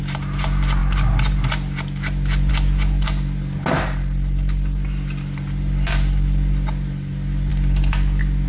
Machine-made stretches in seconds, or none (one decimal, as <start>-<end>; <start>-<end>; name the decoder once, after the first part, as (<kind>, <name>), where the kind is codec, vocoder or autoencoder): none